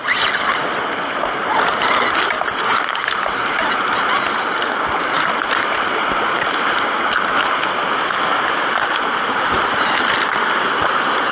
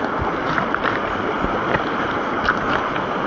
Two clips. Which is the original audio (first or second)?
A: first